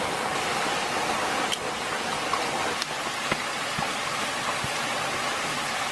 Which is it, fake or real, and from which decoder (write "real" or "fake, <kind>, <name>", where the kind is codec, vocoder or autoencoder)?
real